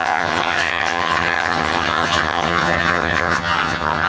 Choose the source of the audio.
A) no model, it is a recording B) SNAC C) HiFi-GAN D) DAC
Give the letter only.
C